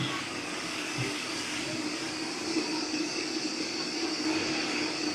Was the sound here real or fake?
fake